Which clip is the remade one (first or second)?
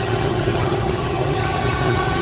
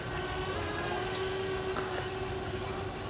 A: first